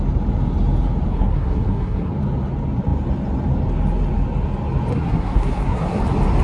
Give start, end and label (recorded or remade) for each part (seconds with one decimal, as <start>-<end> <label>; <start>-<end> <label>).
0.0-1.1 recorded; 1.1-2.1 remade; 2.1-4.9 recorded; 4.9-6.0 remade; 6.0-6.4 recorded